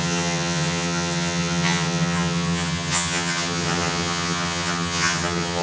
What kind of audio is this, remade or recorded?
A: remade